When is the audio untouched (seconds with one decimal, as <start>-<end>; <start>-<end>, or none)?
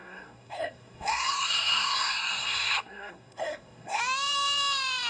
4.0-5.1